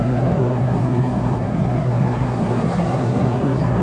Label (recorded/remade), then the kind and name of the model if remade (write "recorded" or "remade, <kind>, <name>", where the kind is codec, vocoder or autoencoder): remade, codec, SNAC